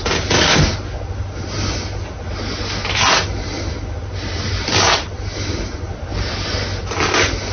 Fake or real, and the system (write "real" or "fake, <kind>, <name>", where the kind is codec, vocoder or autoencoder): real